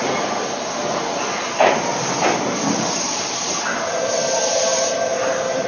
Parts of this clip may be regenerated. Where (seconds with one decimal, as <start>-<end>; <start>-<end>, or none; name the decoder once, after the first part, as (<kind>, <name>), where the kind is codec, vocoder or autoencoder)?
none